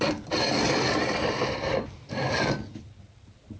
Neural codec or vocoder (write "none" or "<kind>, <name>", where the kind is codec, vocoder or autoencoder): none